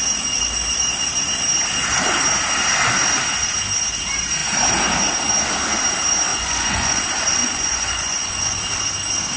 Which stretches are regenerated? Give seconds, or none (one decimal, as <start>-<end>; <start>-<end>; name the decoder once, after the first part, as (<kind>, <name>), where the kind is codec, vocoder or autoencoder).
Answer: 6.3-7.0 (vocoder, Vocos); 7.4-8.6